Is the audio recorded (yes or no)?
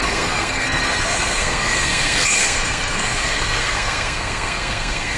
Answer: no